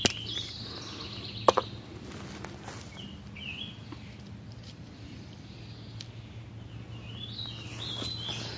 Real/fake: real